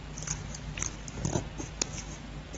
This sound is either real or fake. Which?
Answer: real